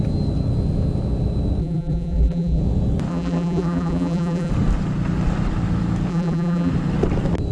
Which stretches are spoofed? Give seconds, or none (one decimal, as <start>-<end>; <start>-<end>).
1.6-2.6; 3.1-4.5; 6.1-6.7